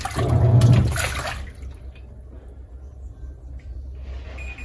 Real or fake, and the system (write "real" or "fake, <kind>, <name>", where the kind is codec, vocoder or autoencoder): real